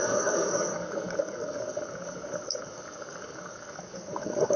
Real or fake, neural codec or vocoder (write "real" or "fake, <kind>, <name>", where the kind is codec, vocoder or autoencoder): fake, codec, DAC